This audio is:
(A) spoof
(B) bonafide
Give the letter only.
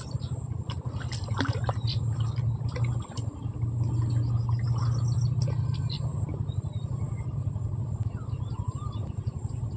B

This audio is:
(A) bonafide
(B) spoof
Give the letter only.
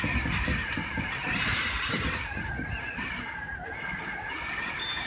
A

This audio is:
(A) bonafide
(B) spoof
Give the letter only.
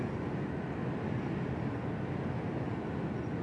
A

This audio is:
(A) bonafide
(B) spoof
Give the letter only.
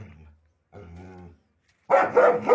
A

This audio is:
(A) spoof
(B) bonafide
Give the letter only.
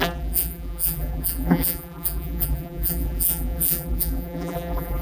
A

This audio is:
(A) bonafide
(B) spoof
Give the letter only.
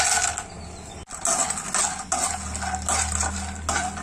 A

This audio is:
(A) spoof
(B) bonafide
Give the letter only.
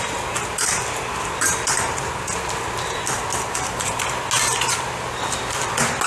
B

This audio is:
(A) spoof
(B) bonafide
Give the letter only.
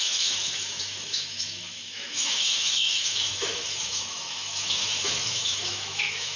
A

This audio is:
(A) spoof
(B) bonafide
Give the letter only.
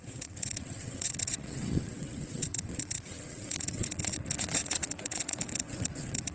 A